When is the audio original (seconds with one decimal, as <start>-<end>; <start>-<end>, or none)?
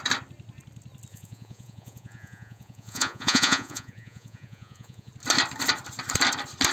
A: 0.0-1.1; 5.1-6.7